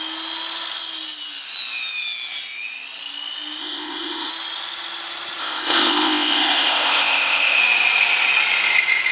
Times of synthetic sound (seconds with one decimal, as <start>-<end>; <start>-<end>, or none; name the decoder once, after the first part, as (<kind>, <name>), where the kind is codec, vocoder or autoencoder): 3.6-4.3 (codec, ZipCodec); 5.4-7.6